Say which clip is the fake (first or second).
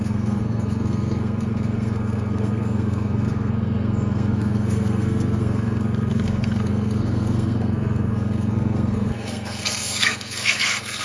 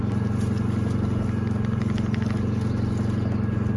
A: first